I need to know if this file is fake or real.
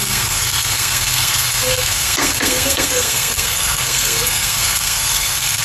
fake